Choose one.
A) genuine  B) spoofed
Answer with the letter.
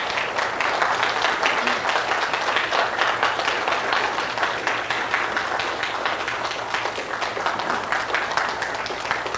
A